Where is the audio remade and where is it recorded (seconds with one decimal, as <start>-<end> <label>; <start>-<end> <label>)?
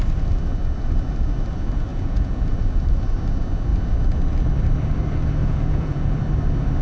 0.0-1.9 recorded; 1.9-2.5 remade; 2.5-5.4 recorded; 5.4-6.2 remade; 6.2-6.8 recorded